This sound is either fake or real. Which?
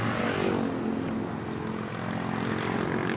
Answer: real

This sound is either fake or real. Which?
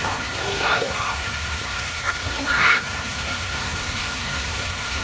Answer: fake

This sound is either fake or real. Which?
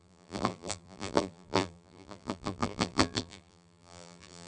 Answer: fake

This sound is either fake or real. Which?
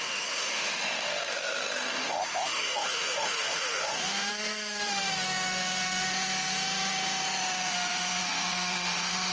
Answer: fake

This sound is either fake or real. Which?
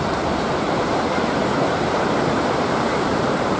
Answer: fake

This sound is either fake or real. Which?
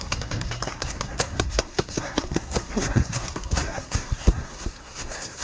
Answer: fake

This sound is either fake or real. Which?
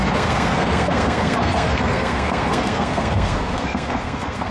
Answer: fake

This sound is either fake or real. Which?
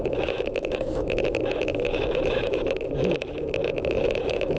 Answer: fake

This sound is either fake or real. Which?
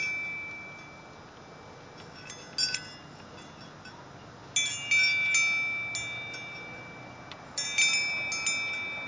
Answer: real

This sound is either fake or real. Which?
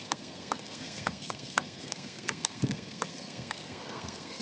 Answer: fake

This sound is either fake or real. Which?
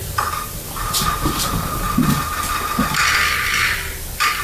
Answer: real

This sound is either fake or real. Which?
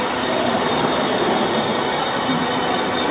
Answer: real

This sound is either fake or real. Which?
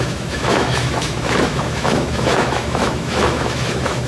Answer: fake